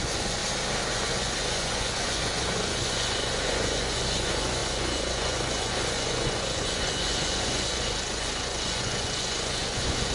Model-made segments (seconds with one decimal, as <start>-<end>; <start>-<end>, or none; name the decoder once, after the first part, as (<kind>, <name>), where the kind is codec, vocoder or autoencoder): 0.0-0.4 (vocoder, Vocos); 0.9-10.1